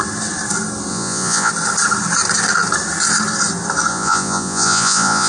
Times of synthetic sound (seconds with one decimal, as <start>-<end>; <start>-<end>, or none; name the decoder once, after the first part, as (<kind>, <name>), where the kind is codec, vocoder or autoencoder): 0.9-1.5 (vocoder, Vocos); 3.9-5.3